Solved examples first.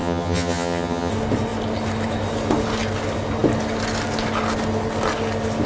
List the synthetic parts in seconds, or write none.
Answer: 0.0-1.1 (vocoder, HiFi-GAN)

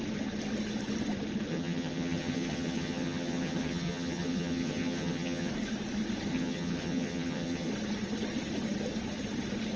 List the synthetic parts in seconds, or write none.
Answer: 1.5-5.5 (vocoder, HiFi-GAN); 6.3-7.7

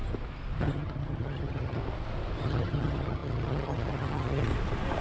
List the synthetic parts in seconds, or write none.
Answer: 0.6-1.8 (vocoder, HiFi-GAN); 2.4-4.5

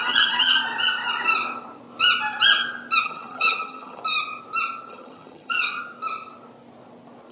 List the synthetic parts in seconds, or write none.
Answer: 0.0-0.6 (vocoder, HiFi-GAN); 3.0-4.0; 4.9-5.8

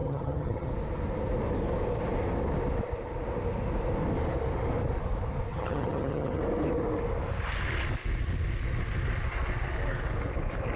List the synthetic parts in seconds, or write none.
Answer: 0.0-0.7 (vocoder, HiFi-GAN); 5.5-6.4

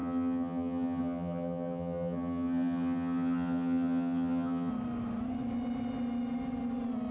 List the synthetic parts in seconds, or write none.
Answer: 0.0-4.7 (vocoder, HiFi-GAN)